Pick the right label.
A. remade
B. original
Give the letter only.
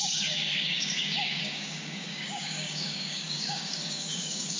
A